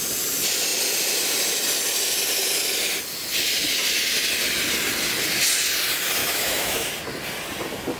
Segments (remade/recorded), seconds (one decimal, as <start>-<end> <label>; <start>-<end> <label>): 0.0-6.2 recorded; 6.2-6.9 remade; 6.9-8.0 recorded